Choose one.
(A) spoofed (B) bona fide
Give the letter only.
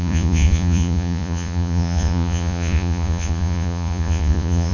A